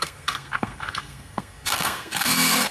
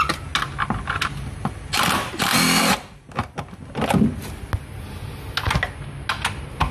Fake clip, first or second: first